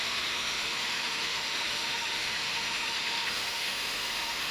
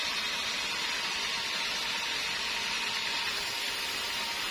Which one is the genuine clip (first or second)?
second